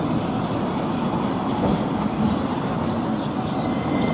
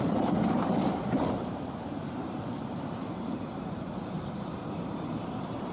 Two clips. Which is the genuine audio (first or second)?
first